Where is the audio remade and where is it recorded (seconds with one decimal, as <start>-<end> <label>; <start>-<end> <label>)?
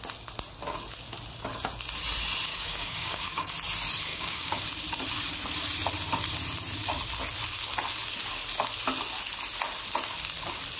0.0-2.5 recorded; 2.5-3.5 remade; 3.5-4.1 recorded; 4.1-4.6 remade; 4.6-10.8 recorded